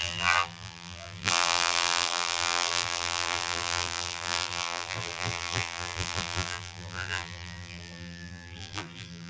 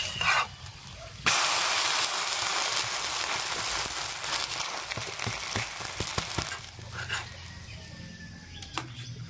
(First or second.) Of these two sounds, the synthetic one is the first